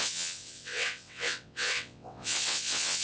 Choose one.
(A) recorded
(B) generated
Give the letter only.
B